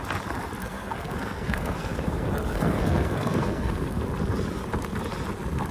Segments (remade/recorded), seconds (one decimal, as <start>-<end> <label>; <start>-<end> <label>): 0.0-0.6 recorded; 0.6-4.0 remade; 4.0-5.7 recorded